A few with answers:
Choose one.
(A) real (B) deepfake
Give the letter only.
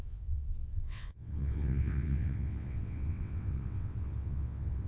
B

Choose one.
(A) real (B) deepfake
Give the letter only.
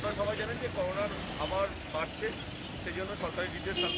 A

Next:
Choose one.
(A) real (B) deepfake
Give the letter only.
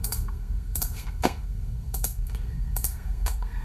B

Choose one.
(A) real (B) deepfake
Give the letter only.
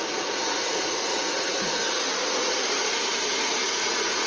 B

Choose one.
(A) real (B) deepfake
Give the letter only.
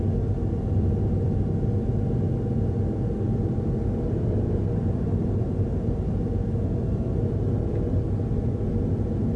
A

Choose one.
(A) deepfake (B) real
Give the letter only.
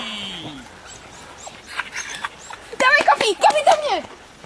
B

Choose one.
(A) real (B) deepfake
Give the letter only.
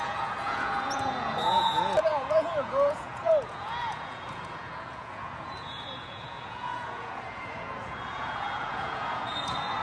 B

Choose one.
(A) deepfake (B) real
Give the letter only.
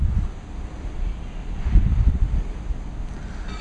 B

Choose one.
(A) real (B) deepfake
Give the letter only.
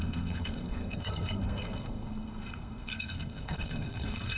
B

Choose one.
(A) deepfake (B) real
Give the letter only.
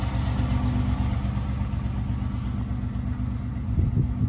B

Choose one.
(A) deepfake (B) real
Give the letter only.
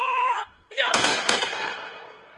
A